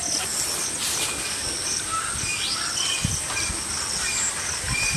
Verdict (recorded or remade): recorded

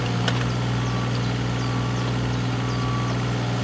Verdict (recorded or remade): recorded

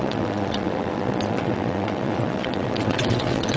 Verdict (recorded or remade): remade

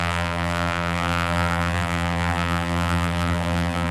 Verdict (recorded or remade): remade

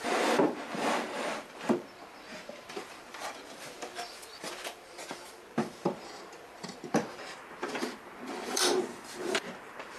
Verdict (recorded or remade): remade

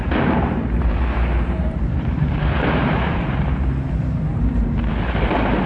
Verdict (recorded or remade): remade